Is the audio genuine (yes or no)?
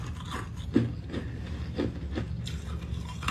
yes